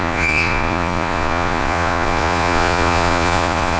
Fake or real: fake